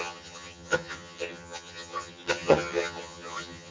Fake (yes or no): yes